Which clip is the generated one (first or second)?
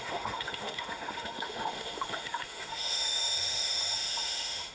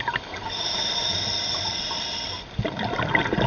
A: first